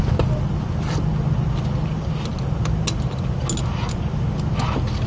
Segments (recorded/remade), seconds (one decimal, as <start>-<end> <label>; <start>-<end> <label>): 0.0-5.1 recorded